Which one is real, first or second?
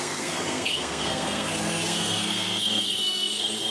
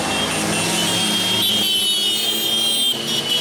second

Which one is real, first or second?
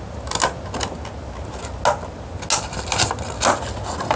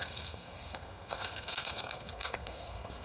first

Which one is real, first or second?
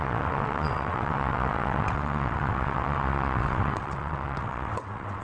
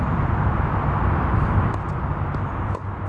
second